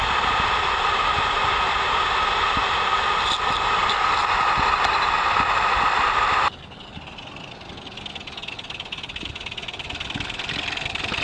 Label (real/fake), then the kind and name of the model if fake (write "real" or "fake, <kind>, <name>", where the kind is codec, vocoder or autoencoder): real